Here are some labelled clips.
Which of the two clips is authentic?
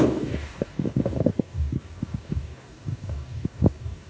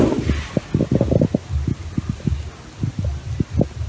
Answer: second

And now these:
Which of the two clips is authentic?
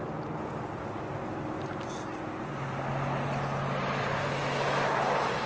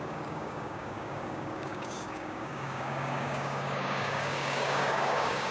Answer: first